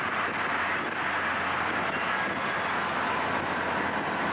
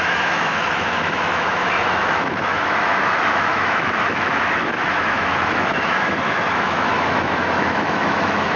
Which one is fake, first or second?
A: second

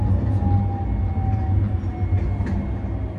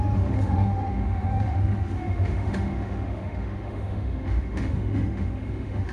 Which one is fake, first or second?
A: second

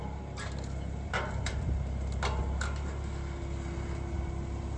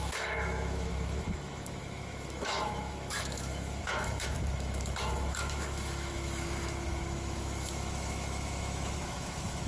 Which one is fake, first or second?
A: second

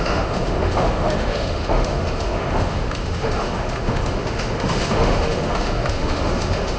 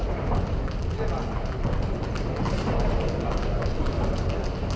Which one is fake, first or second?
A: first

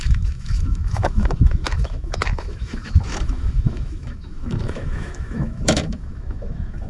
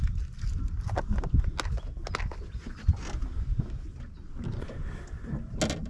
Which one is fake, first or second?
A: first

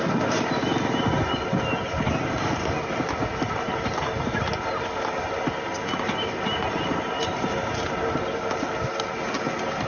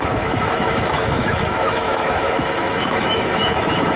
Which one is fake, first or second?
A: second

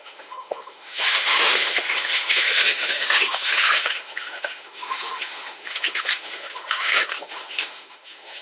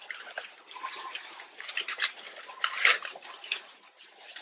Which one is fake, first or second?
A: first